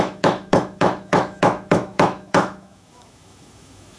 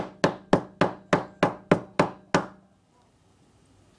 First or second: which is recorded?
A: second